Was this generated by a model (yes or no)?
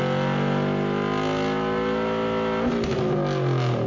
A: no